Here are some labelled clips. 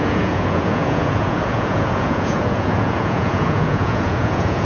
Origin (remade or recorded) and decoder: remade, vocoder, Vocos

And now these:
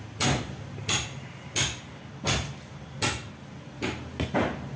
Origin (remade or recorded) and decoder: recorded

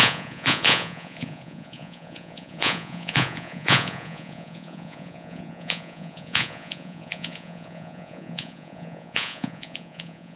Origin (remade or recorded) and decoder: remade, vocoder, Vocos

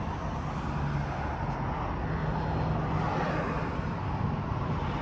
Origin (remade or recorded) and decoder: recorded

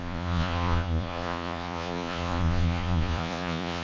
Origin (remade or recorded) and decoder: remade, vocoder, Vocos